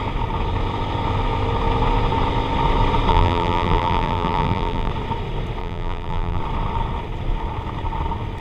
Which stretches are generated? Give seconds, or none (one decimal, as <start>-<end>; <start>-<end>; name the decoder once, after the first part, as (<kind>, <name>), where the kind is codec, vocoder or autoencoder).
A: 3.1-4.9 (vocoder, BigVGAN v2); 5.6-6.4